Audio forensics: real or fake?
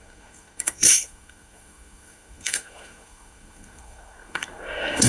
fake